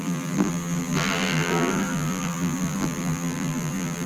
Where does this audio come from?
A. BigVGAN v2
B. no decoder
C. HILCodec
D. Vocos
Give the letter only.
A